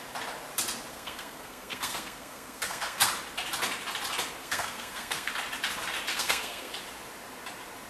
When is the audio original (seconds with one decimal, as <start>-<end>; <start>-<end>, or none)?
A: 0.0-0.9; 3.1-4.4; 5.3-6.1; 6.7-7.9